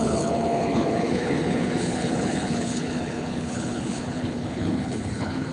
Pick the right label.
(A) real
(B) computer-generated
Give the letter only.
B